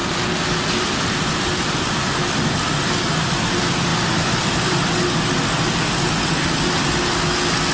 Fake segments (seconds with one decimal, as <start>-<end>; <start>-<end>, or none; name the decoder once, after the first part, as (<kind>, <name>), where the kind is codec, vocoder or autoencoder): 0.0-2.1 (vocoder, BigVGAN v2); 3.9-4.9